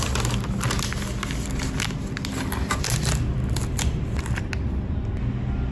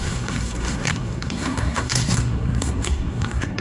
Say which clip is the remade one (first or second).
second